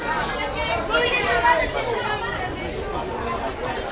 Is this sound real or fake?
real